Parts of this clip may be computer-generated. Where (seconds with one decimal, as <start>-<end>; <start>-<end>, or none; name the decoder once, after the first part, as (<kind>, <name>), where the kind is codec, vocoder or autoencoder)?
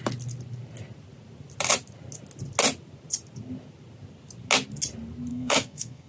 5.3-6.1 (codec, SNAC)